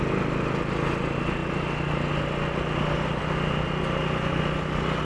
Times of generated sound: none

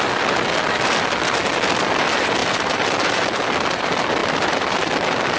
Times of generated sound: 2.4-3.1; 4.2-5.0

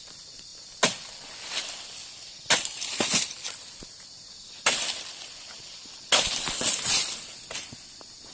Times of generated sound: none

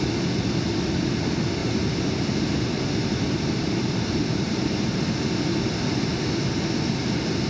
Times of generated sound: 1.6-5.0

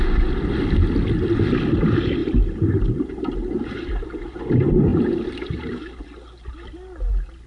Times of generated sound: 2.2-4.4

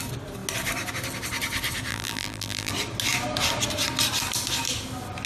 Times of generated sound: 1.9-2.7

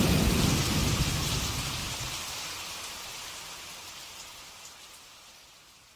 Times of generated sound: 0.8-1.3; 1.8-2.4